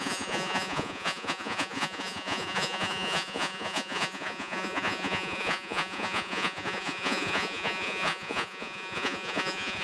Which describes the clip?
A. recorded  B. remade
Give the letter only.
B